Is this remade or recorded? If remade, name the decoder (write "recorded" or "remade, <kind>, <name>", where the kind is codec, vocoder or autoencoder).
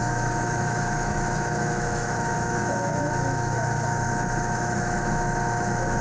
remade, autoencoder, DAC-VAE